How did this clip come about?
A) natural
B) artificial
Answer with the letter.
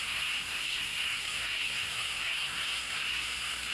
B